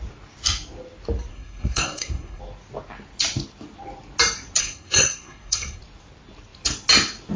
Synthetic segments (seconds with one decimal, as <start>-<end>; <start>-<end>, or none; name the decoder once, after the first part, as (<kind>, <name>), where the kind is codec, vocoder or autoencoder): 1.3-2.4 (codec, SNAC); 4.6-5.8